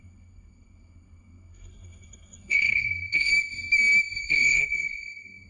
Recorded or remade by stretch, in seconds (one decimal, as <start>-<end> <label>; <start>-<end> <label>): 0.0-3.3 remade; 3.3-4.2 recorded; 4.2-5.5 remade